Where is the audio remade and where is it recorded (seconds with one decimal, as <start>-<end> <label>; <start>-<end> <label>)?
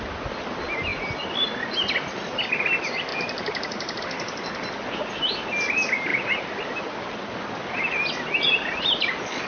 0.0-3.1 recorded; 3.1-4.0 remade; 4.0-6.1 recorded; 6.1-6.8 remade; 6.8-9.5 recorded